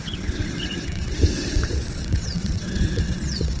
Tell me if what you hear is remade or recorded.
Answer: remade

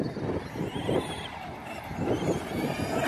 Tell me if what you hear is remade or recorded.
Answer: recorded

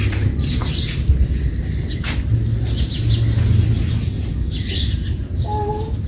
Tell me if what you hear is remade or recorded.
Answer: recorded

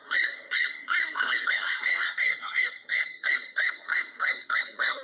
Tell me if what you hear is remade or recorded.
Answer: remade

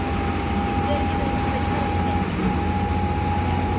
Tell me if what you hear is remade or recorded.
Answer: recorded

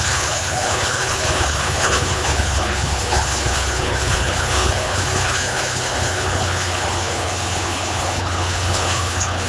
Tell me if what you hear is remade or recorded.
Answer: remade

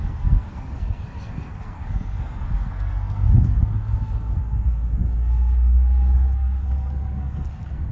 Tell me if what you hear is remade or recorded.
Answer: remade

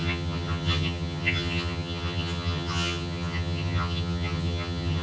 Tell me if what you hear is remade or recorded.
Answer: remade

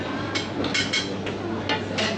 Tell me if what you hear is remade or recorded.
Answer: recorded